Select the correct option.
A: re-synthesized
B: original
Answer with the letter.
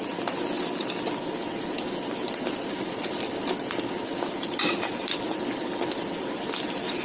B